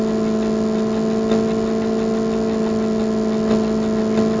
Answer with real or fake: real